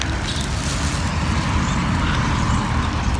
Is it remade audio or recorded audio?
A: recorded